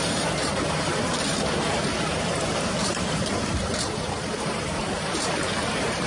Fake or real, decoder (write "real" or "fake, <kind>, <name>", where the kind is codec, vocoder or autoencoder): fake, vocoder, BigVGAN v2